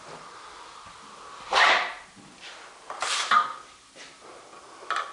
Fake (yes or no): no